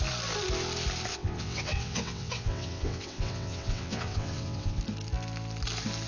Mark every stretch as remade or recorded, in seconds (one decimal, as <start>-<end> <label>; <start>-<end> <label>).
0.0-1.1 recorded; 1.1-4.8 remade; 4.8-6.1 recorded